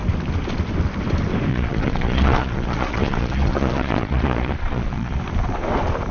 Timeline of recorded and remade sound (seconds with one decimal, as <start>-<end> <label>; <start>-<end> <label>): 0.0-1.5 recorded; 1.5-5.2 remade; 5.2-6.1 recorded